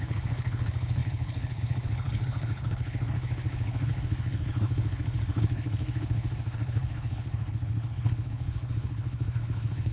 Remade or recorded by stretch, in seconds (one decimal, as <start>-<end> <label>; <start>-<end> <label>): 0.0-9.9 remade